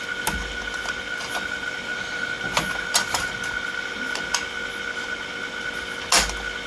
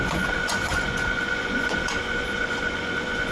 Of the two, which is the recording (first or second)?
first